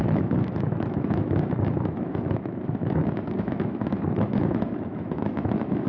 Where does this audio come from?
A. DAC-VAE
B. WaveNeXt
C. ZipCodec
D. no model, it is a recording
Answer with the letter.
A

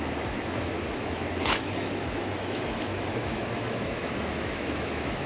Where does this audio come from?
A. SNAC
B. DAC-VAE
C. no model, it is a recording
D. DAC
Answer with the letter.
B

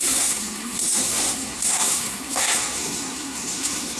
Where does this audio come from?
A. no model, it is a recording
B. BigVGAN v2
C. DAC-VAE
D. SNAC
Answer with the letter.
D